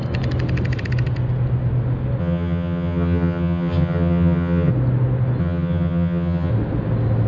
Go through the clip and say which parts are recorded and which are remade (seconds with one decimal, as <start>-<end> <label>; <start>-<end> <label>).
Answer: 0.0-2.2 recorded; 2.2-4.7 remade; 4.7-5.4 recorded; 5.4-6.5 remade; 6.5-7.3 recorded